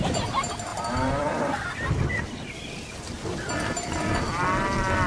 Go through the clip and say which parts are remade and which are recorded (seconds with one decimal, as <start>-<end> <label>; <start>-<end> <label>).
0.0-0.7 recorded; 0.7-1.7 remade; 1.7-5.1 recorded